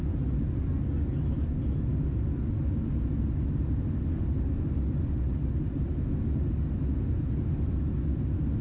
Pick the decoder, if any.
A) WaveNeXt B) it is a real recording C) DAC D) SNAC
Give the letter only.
B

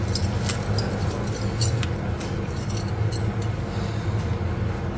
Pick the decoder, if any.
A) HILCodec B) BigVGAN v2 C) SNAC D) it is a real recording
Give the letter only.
D